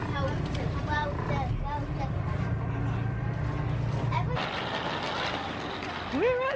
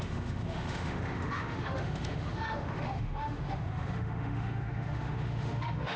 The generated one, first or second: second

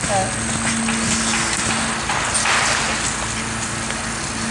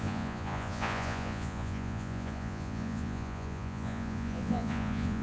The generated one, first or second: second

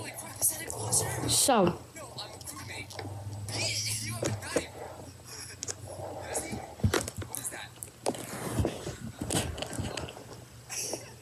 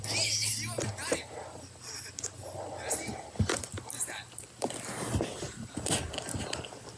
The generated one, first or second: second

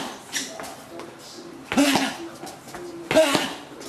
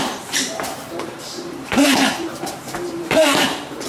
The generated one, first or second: second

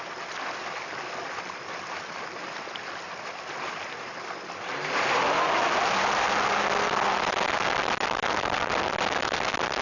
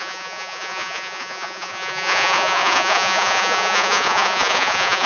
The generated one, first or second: second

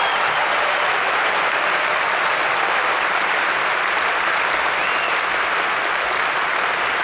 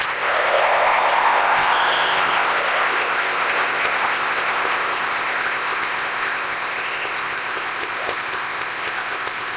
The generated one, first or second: second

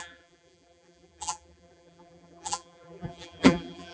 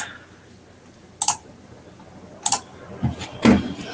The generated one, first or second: first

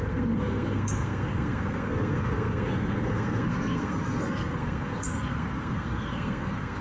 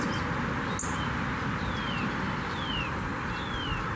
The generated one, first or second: first